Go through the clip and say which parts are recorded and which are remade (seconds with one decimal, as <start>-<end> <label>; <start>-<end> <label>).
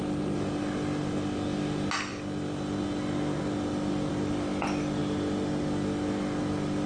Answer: 0.0-6.9 recorded